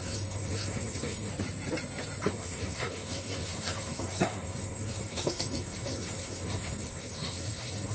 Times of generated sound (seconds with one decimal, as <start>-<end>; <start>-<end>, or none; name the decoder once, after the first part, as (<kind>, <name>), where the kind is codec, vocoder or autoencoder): 0.0-1.3 (codec, SNAC); 2.3-7.9